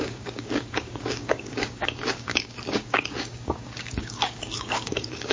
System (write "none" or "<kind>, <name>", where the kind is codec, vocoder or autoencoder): codec, DAC